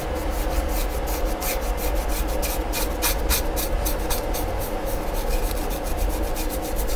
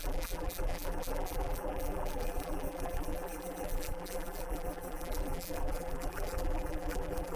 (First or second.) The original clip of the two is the first